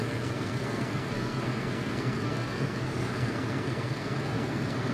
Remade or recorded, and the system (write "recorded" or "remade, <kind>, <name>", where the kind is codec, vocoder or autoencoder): remade, codec, SNAC